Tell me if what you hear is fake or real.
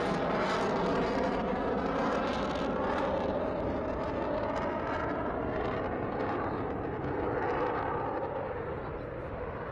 real